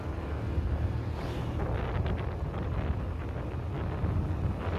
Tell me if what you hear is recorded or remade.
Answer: recorded